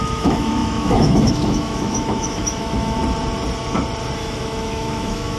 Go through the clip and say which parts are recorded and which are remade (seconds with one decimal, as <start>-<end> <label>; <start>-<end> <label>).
0.0-3.0 remade; 3.0-4.2 recorded; 4.2-5.4 remade